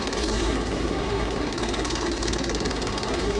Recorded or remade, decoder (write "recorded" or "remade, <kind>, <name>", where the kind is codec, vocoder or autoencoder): remade, codec, SNAC